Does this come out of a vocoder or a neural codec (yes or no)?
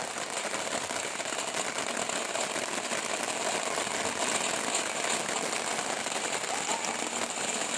no